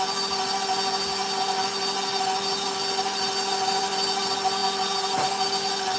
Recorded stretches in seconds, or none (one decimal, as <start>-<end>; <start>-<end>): 0.0-6.0